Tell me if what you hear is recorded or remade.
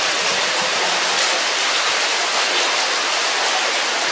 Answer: recorded